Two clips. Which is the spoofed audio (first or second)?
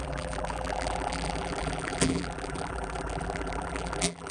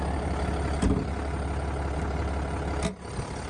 first